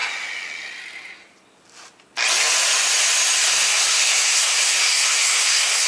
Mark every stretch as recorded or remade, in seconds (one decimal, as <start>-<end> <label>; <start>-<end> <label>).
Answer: 0.0-3.5 recorded; 3.5-5.9 remade